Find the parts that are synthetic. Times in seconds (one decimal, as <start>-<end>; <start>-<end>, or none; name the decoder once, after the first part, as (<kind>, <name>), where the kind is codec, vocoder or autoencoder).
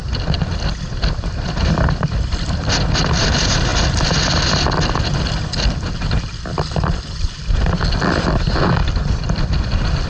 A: 0.7-3.7 (vocoder, BigVGAN v2); 8.4-10.1